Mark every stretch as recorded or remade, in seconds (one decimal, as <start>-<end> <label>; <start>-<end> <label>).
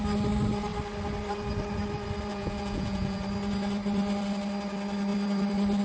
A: 0.0-2.3 recorded; 2.3-3.2 remade; 3.2-5.8 recorded